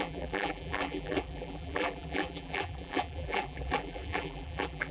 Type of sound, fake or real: fake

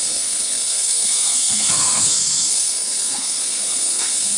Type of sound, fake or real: fake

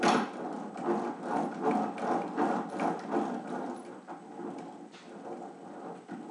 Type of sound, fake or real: real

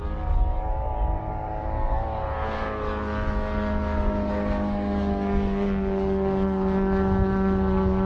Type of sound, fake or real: fake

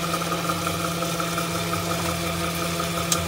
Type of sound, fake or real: real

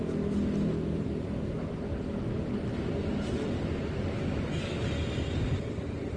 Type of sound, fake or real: real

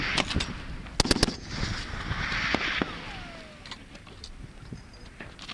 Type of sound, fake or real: real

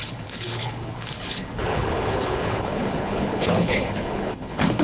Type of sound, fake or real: fake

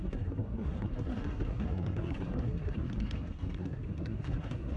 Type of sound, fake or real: fake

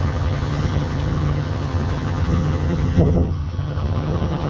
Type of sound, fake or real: fake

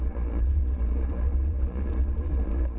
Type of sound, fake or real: fake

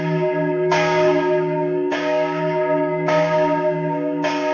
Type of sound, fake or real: fake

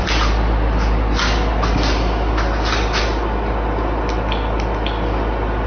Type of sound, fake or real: real